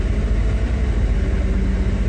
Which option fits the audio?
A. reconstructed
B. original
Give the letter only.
B